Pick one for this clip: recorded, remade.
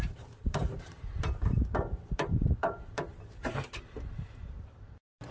remade